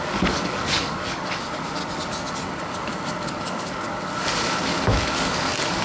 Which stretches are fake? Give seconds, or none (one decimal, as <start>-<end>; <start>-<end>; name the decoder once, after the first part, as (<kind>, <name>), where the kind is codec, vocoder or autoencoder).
0.0-1.8 (codec, DAC); 2.6-5.8